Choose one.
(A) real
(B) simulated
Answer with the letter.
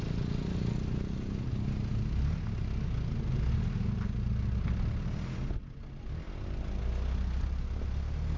A